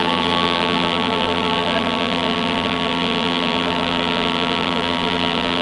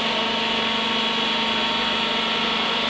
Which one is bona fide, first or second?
second